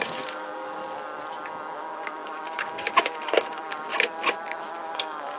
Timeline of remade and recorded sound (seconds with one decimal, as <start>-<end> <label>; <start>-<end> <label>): 0.0-0.8 remade; 0.8-1.8 recorded; 1.8-3.9 remade; 3.9-4.6 recorded; 4.6-5.4 remade